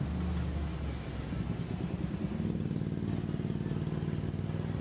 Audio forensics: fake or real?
real